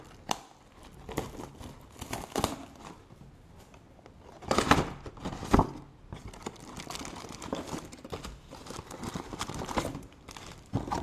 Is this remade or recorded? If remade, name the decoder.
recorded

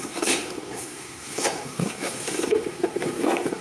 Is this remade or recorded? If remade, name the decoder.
remade, codec, SNAC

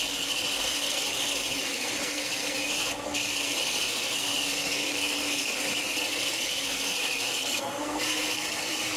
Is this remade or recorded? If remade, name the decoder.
remade, codec, SNAC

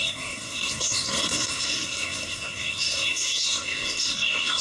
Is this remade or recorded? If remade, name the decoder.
remade, codec, SNAC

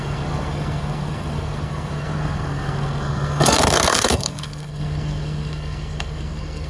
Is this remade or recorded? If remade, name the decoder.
remade, codec, SNAC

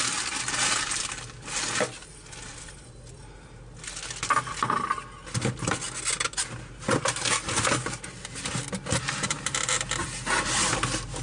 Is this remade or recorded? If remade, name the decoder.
recorded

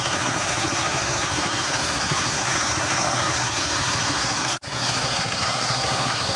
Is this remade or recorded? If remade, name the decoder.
remade, codec, SNAC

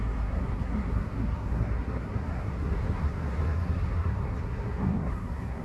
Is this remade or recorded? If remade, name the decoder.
remade, codec, SNAC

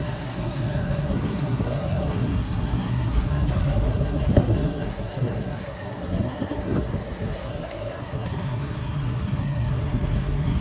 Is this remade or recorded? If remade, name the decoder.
remade, codec, SNAC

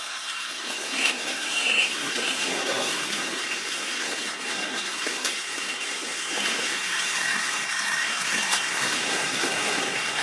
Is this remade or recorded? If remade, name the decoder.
remade, codec, SNAC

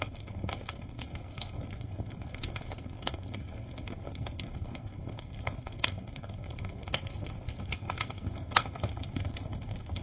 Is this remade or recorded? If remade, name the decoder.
remade, codec, SNAC